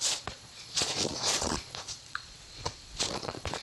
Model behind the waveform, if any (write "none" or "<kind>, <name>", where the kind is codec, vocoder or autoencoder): vocoder, Vocos